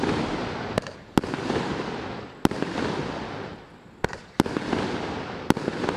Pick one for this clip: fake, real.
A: real